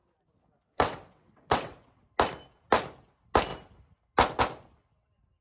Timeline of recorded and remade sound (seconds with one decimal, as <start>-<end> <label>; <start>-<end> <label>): 0.0-0.4 recorded; 0.4-2.0 remade; 2.0-5.4 recorded